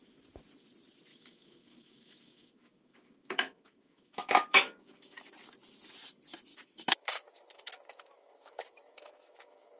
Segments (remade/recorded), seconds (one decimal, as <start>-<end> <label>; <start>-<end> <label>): 0.0-1.1 recorded; 1.1-5.3 remade; 5.3-6.5 recorded; 6.5-9.8 remade